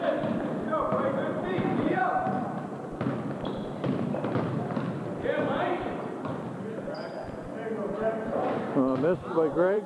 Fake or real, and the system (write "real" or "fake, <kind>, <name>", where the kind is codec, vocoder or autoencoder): fake, vocoder, BigVGAN v2